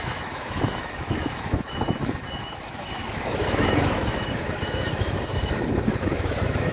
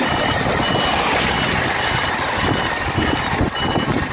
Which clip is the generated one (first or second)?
first